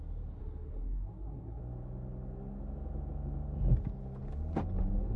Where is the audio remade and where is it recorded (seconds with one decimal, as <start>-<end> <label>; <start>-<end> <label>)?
0.0-0.4 recorded; 0.4-1.6 remade; 1.6-5.2 recorded